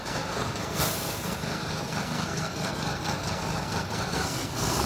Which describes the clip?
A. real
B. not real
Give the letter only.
B